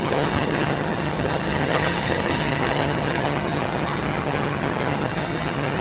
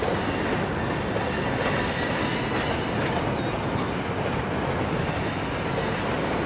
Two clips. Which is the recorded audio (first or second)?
second